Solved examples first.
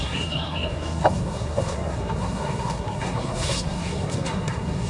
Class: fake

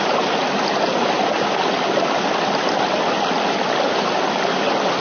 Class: real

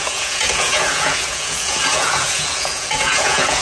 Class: fake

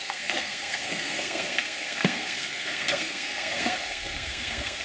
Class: fake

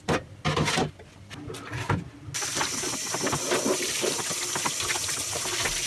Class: real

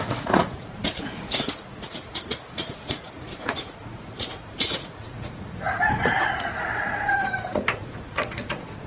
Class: fake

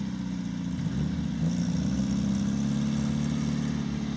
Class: real